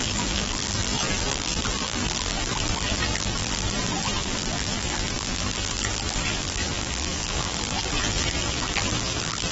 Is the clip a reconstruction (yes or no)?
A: yes